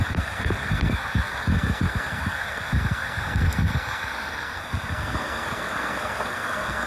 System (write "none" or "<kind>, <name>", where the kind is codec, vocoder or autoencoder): codec, SNAC